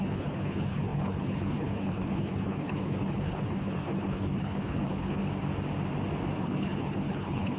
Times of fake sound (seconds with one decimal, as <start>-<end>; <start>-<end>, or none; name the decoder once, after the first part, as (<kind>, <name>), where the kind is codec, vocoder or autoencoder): 0.0-5.2 (codec, HILCodec); 6.4-7.6

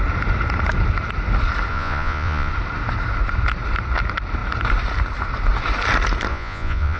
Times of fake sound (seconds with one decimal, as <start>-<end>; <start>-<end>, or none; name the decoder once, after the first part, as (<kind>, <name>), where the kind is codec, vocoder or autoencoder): 1.7-2.5 (vocoder, Vocos); 6.3-7.0

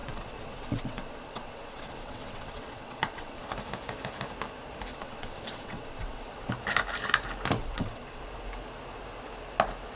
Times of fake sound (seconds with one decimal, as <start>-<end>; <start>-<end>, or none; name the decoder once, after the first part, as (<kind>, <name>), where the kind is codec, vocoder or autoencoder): 0.0-3.4 (vocoder, WaveNeXt); 4.9-6.5; 7.6-8.2

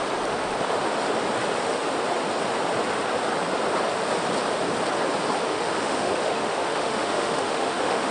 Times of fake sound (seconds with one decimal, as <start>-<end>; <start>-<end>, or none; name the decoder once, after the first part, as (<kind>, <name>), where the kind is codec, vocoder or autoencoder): 5.5-8.1 (autoencoder, DAC-VAE)

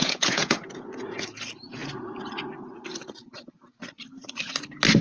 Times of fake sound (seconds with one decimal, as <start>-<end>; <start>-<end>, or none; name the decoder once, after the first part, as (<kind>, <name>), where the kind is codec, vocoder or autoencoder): 0.0-0.8 (vocoder, Vocos)

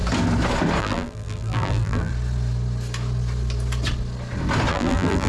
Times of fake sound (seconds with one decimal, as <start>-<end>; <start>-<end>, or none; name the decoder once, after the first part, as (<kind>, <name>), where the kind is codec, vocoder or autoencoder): 0.8-2.1 (vocoder, BigVGAN v2); 4.7-5.3

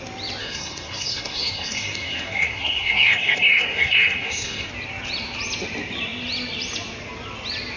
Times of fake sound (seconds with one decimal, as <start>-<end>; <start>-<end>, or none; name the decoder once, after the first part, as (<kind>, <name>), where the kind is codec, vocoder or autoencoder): 0.4-4.7 (codec, SNAC)

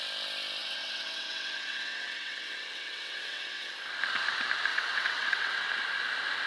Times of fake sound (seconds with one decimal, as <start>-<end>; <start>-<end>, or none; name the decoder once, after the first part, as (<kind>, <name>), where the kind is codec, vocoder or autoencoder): 0.6-3.7 (vocoder, WaveNeXt); 4.7-5.7